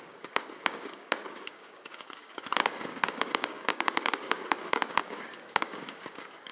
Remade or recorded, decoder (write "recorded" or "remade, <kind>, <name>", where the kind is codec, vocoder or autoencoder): remade, codec, DAC